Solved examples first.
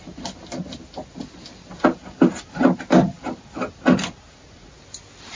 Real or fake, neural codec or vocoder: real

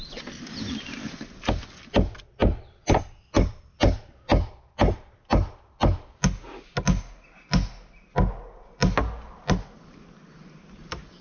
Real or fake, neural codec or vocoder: real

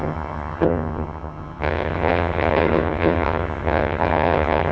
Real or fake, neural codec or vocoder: fake, vocoder, HiFi-GAN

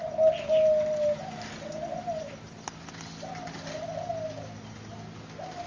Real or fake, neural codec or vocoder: real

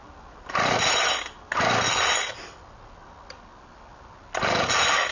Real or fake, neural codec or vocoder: real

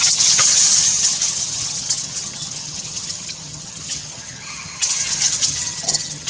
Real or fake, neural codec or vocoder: fake, vocoder, HiFi-GAN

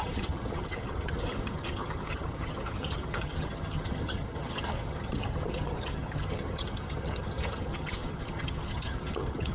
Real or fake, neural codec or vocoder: fake, vocoder, HiFi-GAN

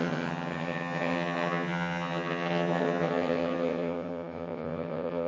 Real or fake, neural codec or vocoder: fake, vocoder, HiFi-GAN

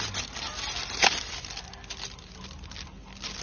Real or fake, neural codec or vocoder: real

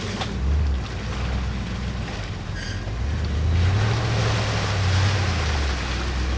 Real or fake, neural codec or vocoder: real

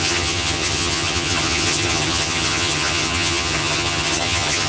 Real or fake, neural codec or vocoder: fake, vocoder, HiFi-GAN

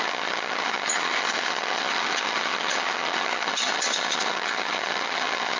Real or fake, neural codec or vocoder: fake, vocoder, HiFi-GAN